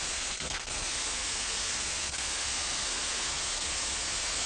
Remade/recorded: remade